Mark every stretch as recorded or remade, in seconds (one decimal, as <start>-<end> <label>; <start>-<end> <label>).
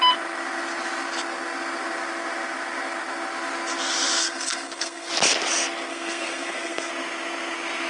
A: 0.0-4.2 recorded; 4.2-5.1 remade; 5.1-5.9 recorded; 5.9-6.9 remade; 6.9-7.9 recorded